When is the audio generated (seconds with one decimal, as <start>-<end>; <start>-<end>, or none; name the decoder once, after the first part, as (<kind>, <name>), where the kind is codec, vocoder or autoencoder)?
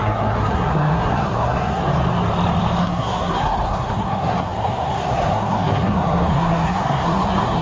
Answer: 0.0-1.8 (codec, SNAC); 2.8-7.6